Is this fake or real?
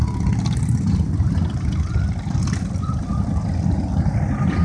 real